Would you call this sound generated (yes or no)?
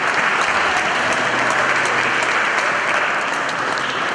no